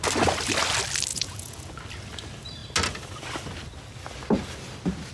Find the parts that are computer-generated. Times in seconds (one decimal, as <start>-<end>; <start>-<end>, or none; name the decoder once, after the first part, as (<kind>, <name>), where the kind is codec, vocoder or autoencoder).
1.1-1.7 (vocoder, Vocos)